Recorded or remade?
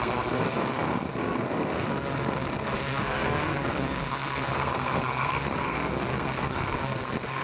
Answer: remade